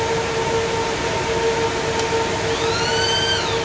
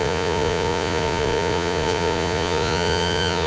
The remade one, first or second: second